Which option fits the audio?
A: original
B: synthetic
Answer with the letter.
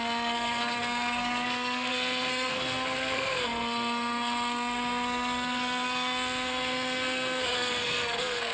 B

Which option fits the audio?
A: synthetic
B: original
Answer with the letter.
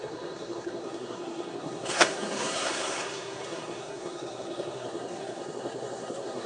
A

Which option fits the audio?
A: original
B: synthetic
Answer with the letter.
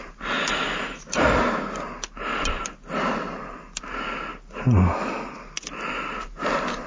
A